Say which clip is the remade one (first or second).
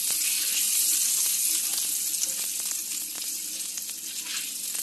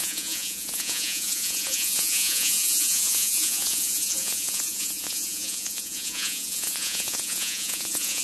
second